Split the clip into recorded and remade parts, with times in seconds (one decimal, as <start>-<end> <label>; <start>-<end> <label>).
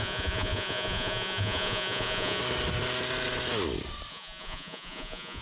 0.0-2.4 remade; 2.4-4.1 recorded; 4.1-5.4 remade